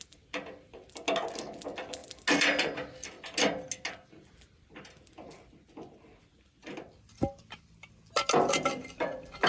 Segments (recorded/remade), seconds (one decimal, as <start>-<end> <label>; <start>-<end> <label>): 0.0-9.5 recorded